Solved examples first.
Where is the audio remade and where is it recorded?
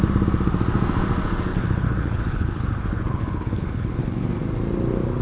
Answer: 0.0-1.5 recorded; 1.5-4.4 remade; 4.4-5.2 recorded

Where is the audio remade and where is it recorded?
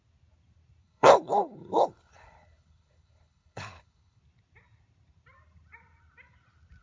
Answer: 0.0-0.8 recorded; 0.8-4.2 remade; 4.2-6.8 recorded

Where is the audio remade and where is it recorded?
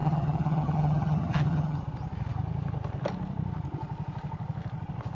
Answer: 0.0-1.8 remade; 1.8-5.1 recorded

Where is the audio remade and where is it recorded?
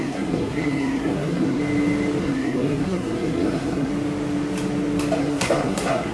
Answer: 0.0-1.6 remade; 1.6-2.2 recorded; 2.2-3.9 remade; 3.9-5.2 recorded; 5.2-6.1 remade